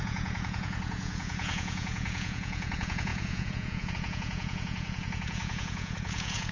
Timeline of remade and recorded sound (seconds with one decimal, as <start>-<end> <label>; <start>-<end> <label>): 0.0-6.5 remade